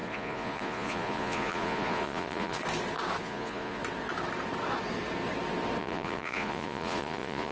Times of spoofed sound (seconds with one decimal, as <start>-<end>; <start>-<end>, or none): 0.0-2.6; 3.2-3.8; 5.8-7.5